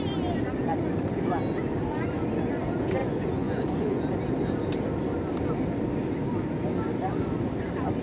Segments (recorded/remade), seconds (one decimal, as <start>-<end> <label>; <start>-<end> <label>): 0.0-3.0 recorded; 3.0-4.0 remade; 4.0-8.0 recorded